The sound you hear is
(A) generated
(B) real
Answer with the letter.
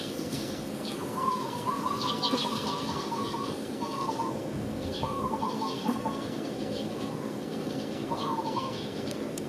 A